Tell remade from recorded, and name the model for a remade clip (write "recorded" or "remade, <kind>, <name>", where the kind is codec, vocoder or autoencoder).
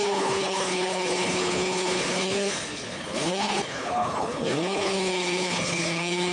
remade, codec, HILCodec